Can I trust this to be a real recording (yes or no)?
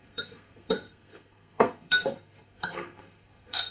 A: no